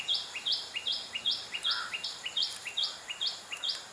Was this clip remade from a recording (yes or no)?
no